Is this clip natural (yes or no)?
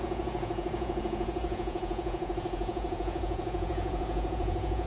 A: no